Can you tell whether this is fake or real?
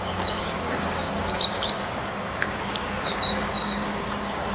fake